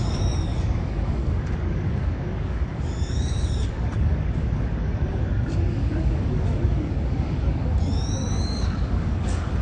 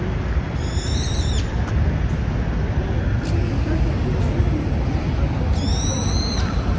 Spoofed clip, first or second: first